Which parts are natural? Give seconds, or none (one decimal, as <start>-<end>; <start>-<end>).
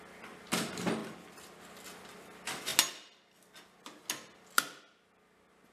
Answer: 0.0-5.7